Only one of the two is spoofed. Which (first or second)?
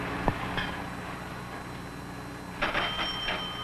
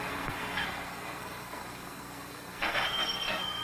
second